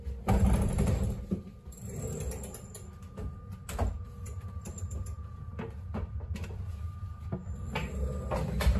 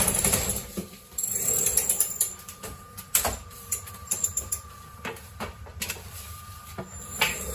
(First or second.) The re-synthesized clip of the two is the second